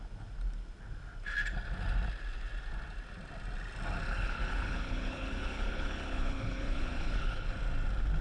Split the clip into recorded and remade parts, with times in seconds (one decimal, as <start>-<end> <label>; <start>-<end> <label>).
0.0-4.1 recorded; 4.1-7.5 remade; 7.5-8.2 recorded